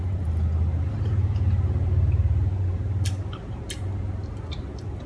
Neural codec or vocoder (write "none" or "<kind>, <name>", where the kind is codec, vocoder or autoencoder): none